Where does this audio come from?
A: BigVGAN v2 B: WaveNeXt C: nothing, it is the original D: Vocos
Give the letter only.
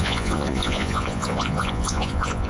D